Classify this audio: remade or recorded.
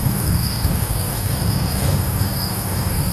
remade